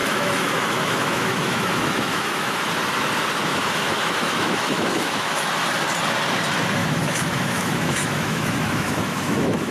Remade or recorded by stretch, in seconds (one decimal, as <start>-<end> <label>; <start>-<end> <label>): 0.0-2.7 remade; 2.7-3.5 recorded; 3.5-5.5 remade; 5.5-6.8 recorded; 6.8-9.7 remade

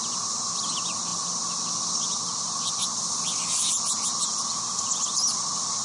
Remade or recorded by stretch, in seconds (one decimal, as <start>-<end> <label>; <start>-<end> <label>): 0.0-5.8 recorded

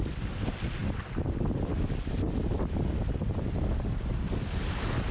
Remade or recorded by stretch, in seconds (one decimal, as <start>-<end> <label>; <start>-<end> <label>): 0.0-5.1 recorded

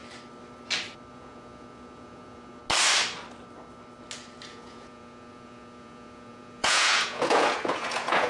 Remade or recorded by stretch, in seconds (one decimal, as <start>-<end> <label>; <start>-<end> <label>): 0.0-1.1 recorded; 1.1-2.6 remade; 2.6-4.5 recorded; 4.5-8.3 remade